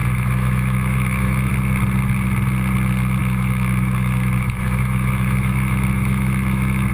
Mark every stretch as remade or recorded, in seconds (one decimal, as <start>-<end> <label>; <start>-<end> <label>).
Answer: 0.0-1.5 remade; 1.5-3.2 recorded; 3.2-6.9 remade